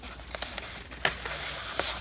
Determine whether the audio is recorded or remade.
recorded